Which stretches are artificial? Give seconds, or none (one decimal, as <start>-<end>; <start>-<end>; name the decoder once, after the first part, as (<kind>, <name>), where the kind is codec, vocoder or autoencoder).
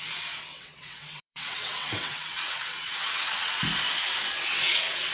0.5-3.6 (vocoder, WaveNeXt); 4.5-5.1